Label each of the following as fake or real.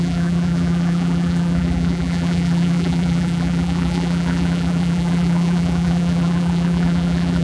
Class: fake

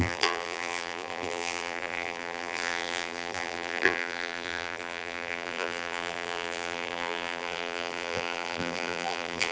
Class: fake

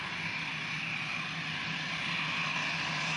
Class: real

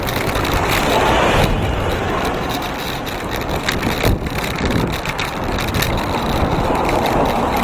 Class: real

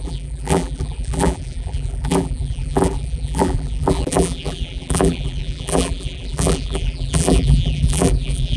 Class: fake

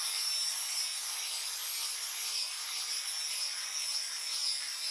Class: real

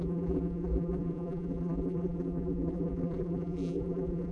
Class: fake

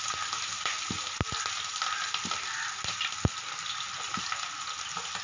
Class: real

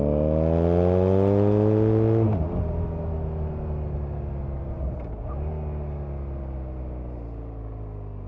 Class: real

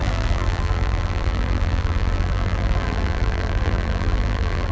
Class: fake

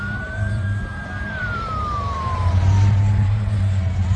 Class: fake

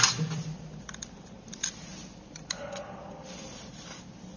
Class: fake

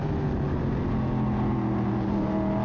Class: real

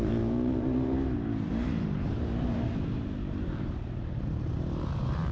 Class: fake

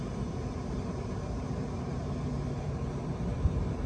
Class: fake